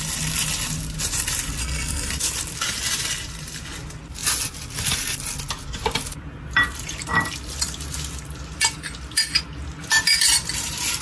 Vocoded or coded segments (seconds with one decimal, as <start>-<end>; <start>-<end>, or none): 1.6-2.1